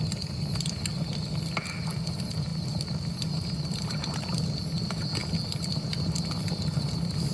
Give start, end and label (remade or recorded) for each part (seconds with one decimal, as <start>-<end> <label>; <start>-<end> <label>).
0.0-7.3 recorded